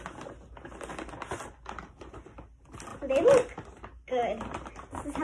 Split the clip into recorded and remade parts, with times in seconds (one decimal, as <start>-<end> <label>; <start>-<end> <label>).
0.0-5.2 recorded